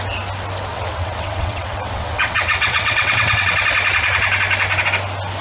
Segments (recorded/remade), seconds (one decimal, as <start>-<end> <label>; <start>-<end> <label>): 0.0-0.7 recorded; 0.7-3.4 remade; 3.4-5.4 recorded

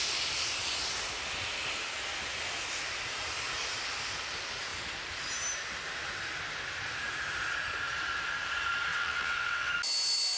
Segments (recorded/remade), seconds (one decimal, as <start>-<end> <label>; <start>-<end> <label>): 0.0-8.9 recorded; 8.9-9.7 remade; 9.7-10.4 recorded

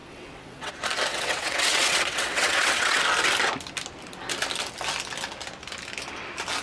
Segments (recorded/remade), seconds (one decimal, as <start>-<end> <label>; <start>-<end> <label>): 0.0-0.7 remade; 0.7-1.1 recorded; 1.1-3.0 remade; 3.0-6.6 recorded

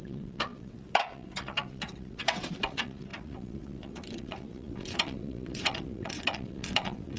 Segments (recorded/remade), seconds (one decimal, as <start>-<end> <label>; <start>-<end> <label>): 0.0-7.2 remade

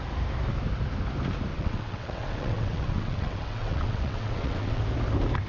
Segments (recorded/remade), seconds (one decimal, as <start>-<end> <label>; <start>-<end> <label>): 0.0-1.5 recorded; 1.5-4.8 remade; 4.8-5.5 recorded

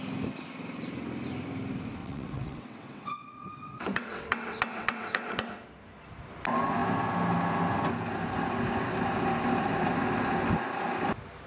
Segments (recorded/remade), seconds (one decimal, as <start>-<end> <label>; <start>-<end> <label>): 0.0-2.0 recorded; 2.0-5.5 remade; 5.5-11.5 recorded

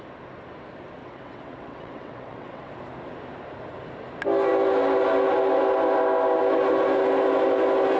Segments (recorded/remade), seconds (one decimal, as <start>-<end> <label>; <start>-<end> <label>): 0.0-1.0 recorded; 1.0-2.7 remade; 2.7-8.0 recorded